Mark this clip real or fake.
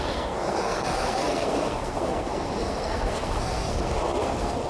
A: fake